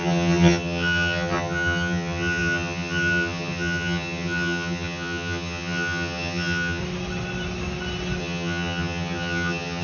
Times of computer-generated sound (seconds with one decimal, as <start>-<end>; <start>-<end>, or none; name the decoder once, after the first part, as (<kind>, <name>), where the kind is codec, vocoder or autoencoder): 0.0-6.8 (vocoder, HiFi-GAN); 8.2-9.8